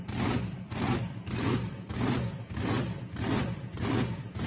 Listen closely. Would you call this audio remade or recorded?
recorded